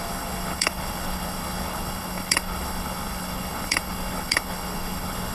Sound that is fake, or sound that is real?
fake